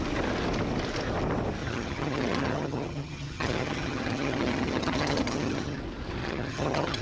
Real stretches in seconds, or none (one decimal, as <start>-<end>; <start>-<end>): 0.0-1.6; 5.8-6.2